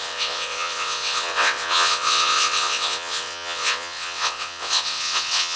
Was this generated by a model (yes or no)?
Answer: yes